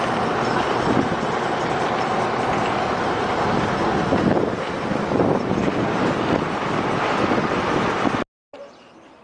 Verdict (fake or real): real